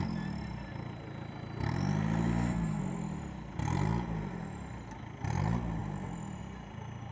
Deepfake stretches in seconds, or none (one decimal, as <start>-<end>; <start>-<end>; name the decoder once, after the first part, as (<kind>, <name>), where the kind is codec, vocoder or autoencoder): 2.3-2.8 (codec, SNAC)